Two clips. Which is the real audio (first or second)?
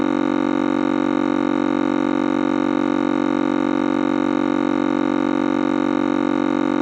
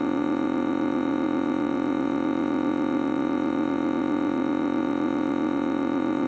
first